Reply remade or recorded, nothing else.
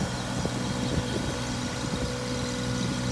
recorded